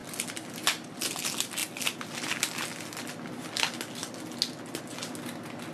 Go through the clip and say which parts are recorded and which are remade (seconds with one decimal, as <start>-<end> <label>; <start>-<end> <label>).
0.0-5.7 recorded